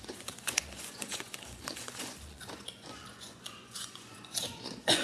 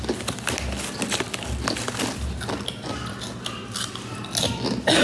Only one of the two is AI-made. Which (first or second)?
first